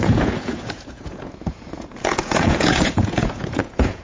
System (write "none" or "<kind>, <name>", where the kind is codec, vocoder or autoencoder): vocoder, Vocos